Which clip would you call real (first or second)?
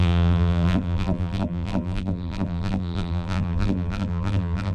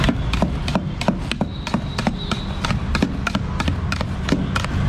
second